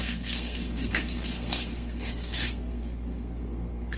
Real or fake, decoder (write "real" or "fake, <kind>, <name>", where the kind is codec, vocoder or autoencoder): fake, codec, SNAC